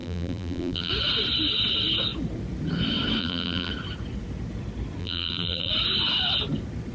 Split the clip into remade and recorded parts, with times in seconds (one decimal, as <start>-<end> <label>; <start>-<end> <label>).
0.0-0.9 remade; 0.9-3.2 recorded; 3.2-3.7 remade; 3.7-5.0 recorded; 5.0-5.7 remade; 5.7-6.9 recorded